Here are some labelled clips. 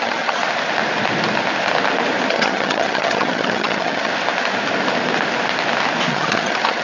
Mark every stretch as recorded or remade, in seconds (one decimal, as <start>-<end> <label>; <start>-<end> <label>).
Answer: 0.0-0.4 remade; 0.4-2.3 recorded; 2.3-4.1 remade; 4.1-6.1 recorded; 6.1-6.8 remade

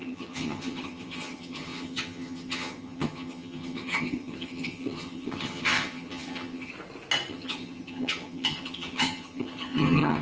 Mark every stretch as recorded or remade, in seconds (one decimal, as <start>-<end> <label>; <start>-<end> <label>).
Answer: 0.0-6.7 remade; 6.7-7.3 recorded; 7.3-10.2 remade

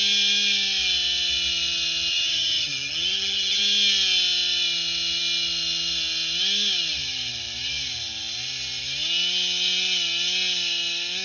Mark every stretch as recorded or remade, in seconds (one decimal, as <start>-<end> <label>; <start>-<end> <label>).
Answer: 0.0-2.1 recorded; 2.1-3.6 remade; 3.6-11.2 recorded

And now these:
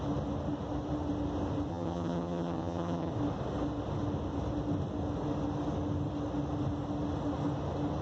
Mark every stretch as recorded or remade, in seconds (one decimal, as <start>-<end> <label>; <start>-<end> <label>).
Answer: 0.0-1.7 recorded; 1.7-3.1 remade; 3.1-8.0 recorded

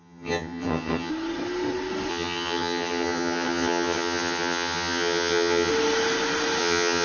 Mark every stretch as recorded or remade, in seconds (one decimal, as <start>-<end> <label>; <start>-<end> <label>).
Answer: 0.0-1.1 remade; 1.1-2.1 recorded; 2.1-5.7 remade; 5.7-6.6 recorded; 6.6-7.0 remade

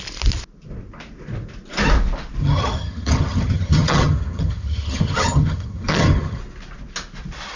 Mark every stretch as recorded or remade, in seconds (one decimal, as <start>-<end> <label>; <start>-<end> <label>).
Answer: 0.0-2.4 recorded; 2.4-6.4 remade; 6.4-7.6 recorded